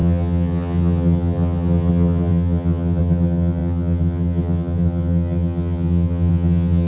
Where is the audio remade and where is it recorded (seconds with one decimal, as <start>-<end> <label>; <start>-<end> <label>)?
0.0-6.9 remade